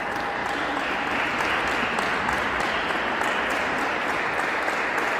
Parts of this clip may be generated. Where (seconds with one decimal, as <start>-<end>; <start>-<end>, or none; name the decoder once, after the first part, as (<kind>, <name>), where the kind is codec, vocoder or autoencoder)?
none